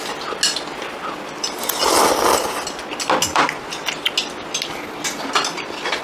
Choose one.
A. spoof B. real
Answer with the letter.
B